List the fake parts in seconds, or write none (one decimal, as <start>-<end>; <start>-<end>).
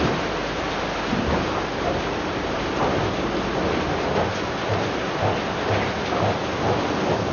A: none